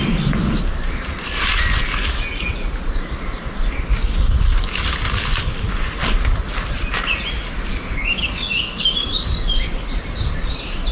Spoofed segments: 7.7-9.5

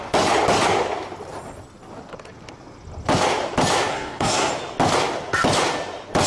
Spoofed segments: 3.9-4.5

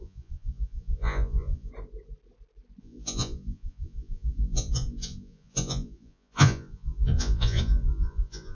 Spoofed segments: 0.0-1.7; 2.8-8.5

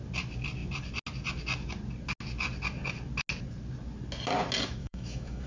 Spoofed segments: 4.8-5.5